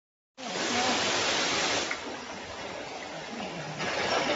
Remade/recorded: recorded